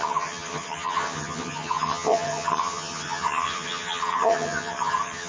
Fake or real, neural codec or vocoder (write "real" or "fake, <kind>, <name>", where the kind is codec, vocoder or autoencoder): fake, vocoder, HiFi-GAN